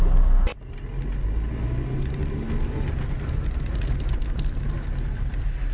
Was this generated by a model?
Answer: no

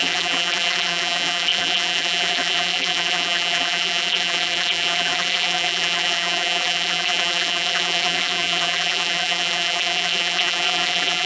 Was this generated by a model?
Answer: yes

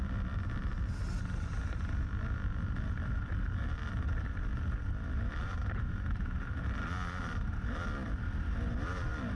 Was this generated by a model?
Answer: no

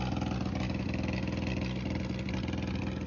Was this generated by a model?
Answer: no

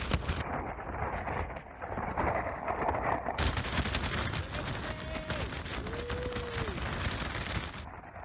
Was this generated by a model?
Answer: no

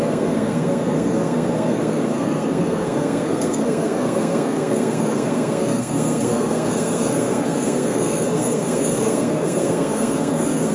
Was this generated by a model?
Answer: yes